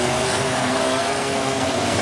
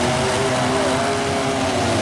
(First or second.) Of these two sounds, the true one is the second